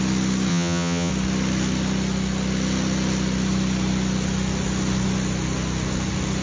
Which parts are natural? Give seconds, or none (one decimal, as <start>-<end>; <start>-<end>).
0.0-0.5; 1.1-6.4